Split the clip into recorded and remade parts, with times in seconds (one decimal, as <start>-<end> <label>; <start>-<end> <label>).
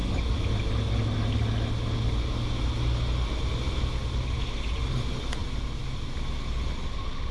0.0-7.3 recorded